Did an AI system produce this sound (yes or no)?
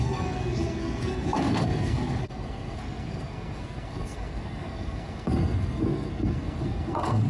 yes